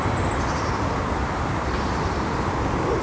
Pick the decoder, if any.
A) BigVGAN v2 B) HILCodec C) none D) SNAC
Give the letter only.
C